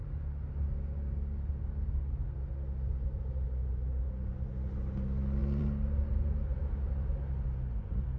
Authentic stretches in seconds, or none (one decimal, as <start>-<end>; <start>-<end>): 0.0-8.2